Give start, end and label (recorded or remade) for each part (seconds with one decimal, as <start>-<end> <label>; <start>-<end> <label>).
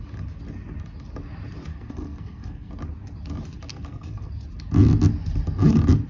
0.0-1.7 recorded; 1.7-2.7 remade; 2.7-3.7 recorded; 3.7-4.3 remade; 4.3-6.1 recorded